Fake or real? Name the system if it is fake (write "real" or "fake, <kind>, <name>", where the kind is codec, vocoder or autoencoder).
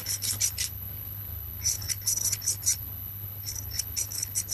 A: fake, codec, HILCodec